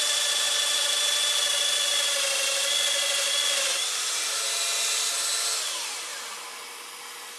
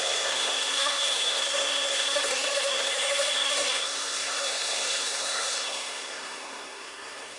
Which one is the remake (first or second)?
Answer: second